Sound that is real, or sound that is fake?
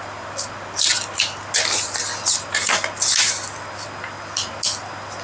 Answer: real